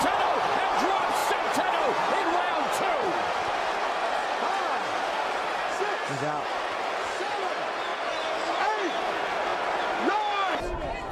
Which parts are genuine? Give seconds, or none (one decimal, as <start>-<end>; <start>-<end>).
0.0-11.1